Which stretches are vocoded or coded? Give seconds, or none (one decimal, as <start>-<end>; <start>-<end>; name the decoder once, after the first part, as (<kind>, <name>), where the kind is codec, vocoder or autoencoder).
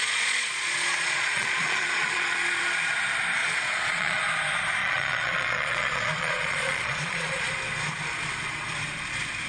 0.0-2.6 (vocoder, Vocos); 3.4-4.2; 4.8-7.5